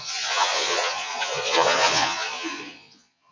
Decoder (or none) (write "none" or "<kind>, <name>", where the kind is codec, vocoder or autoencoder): vocoder, Vocos